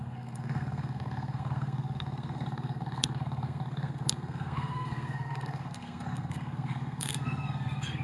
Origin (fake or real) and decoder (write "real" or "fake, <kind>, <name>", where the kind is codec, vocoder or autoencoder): fake, codec, SNAC